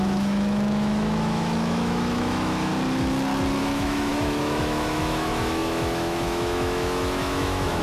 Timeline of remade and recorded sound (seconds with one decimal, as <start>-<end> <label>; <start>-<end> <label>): 0.0-2.7 remade; 2.7-3.6 recorded; 3.6-7.8 remade